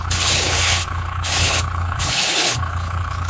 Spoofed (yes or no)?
yes